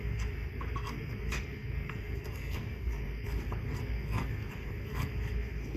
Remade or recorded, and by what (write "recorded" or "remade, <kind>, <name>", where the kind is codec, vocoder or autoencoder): remade, codec, SNAC